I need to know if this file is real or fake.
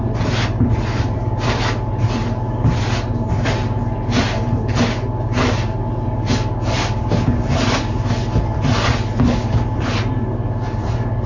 real